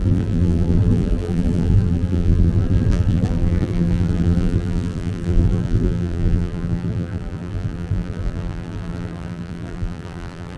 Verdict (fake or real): fake